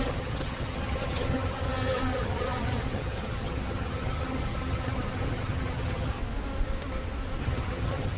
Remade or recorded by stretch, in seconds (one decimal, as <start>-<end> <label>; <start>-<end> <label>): 0.0-6.2 remade; 6.2-7.4 recorded; 7.4-8.2 remade